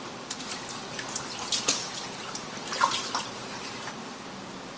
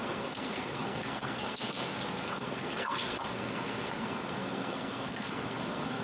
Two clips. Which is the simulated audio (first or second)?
second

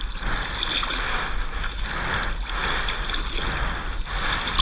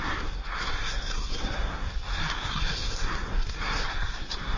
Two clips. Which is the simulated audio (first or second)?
second